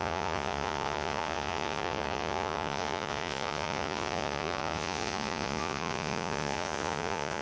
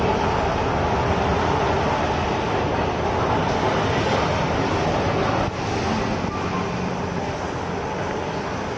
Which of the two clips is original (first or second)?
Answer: second